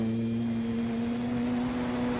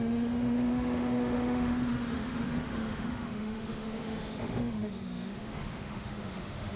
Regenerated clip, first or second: second